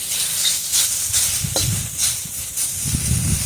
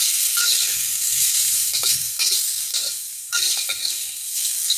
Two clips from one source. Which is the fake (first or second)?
second